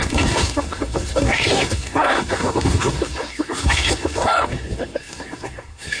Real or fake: fake